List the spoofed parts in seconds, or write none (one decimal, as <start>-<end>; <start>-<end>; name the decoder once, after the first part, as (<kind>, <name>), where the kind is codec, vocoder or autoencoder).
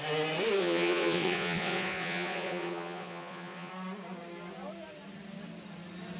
0.6-3.7 (vocoder, Vocos)